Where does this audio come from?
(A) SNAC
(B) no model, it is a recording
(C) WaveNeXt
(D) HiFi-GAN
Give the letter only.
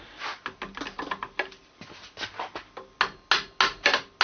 B